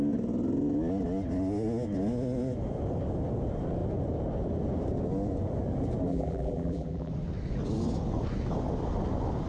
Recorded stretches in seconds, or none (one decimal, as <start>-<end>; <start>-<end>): 0.0-6.1; 7.1-9.5